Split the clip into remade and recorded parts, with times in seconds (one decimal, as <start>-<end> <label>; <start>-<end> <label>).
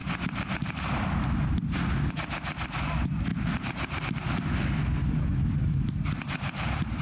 0.0-1.1 remade; 1.1-3.3 recorded; 3.3-4.0 remade; 4.0-5.6 recorded; 5.6-7.0 remade